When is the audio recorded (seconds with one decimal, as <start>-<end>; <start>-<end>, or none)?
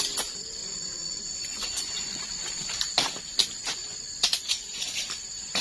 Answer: 0.0-0.6; 2.2-3.8; 5.0-5.6